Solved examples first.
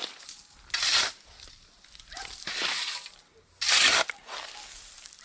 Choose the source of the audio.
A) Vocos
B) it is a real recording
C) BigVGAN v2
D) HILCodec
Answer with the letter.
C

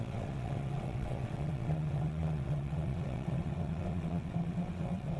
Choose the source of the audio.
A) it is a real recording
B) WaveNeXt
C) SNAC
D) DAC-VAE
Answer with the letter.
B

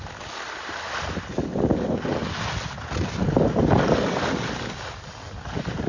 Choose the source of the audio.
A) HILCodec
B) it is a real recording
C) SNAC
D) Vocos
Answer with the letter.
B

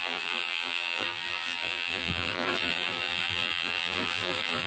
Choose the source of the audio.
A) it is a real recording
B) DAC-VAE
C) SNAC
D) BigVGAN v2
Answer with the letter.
D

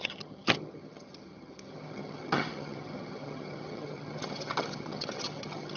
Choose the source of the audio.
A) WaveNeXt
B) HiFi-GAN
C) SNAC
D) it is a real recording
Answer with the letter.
B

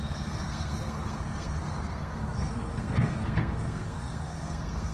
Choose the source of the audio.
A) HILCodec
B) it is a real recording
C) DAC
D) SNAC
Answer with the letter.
D